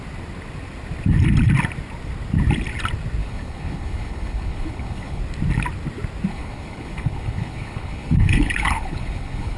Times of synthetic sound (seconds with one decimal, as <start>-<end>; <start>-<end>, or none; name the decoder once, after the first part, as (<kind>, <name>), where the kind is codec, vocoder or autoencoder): 3.2-5.2 (codec, HILCodec); 6.3-9.6